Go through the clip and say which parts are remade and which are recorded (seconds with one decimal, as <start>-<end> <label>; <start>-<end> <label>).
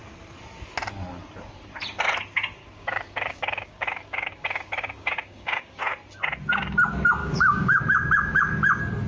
0.0-2.6 recorded; 2.6-5.8 remade; 5.8-7.2 recorded; 7.2-7.8 remade; 7.8-9.1 recorded